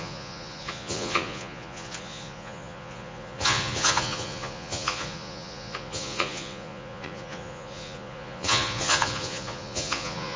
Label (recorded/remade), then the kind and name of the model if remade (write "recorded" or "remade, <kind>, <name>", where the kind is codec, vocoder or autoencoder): remade, vocoder, Vocos